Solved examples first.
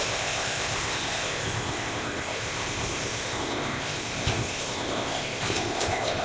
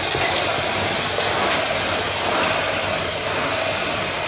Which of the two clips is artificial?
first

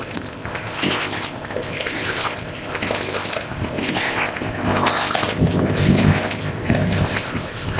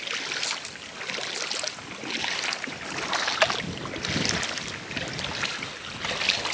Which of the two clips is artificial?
first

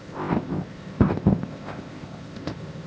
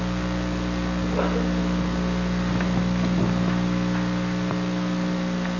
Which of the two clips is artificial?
first